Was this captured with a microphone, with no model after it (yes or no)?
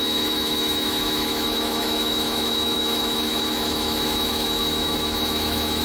no